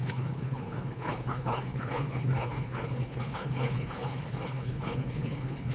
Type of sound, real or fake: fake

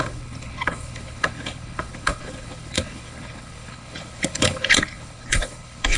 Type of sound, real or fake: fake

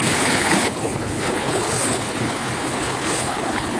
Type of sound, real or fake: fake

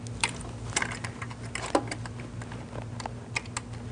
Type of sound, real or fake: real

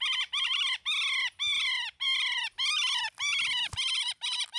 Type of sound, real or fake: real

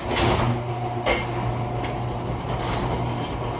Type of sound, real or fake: real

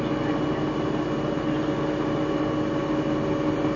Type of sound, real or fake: real